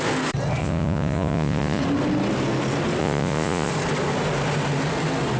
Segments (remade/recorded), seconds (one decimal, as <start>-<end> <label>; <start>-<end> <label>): 0.0-0.6 recorded; 0.6-1.8 remade; 1.8-3.0 recorded; 3.0-3.7 remade; 3.7-5.4 recorded